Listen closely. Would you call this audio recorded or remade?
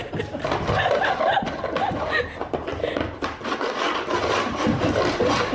recorded